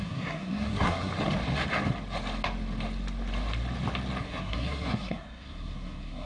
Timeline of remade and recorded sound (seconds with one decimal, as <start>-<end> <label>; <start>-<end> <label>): 0.0-1.1 remade; 1.1-4.2 recorded; 4.2-6.3 remade